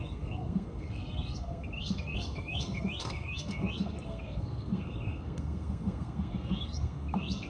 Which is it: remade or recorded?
remade